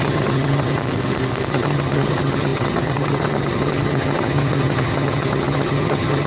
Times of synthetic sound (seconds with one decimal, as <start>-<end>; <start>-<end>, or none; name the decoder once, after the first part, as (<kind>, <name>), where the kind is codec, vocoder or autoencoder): 0.0-0.8 (vocoder, HiFi-GAN); 1.5-6.3